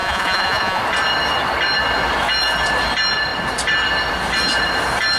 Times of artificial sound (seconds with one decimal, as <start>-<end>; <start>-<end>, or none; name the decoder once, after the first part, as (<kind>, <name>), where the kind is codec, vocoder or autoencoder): 0.0-0.8 (vocoder, Vocos)